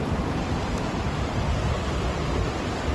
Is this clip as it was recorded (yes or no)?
no